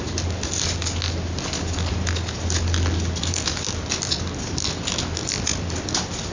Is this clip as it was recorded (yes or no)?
yes